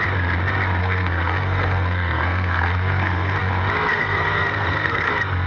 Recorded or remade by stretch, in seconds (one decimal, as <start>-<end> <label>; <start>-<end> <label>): 0.0-0.8 recorded; 0.8-3.5 remade; 3.5-3.9 recorded; 3.9-5.1 remade; 5.1-5.5 recorded